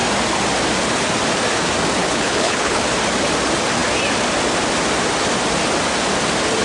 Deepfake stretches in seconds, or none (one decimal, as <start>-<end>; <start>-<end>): 2.0-2.8